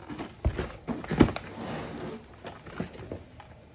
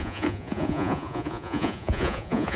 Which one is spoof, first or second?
second